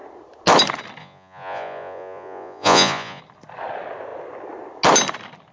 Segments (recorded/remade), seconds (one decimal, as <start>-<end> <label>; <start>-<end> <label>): 0.0-1.0 recorded; 1.0-3.2 remade; 3.2-5.5 recorded